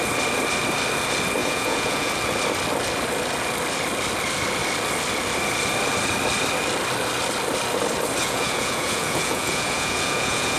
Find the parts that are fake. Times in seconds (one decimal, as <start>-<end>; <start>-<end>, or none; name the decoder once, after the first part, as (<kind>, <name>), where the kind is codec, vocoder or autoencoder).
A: 1.4-2.1 (vocoder, Vocos); 8.2-10.6